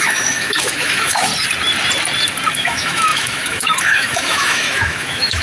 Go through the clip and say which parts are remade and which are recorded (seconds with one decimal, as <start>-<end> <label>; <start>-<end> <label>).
0.0-1.3 remade; 1.3-2.5 recorded; 2.5-5.4 remade